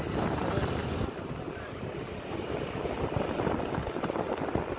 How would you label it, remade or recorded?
recorded